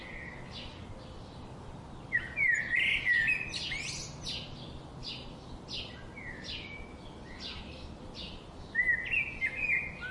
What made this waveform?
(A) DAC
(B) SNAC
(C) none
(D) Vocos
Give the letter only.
C